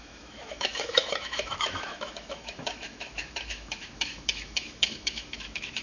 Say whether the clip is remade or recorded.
remade